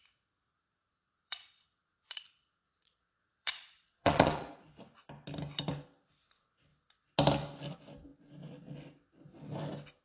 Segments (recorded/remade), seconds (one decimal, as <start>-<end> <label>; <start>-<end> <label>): 0.0-0.5 recorded; 0.5-4.7 remade; 4.7-10.0 recorded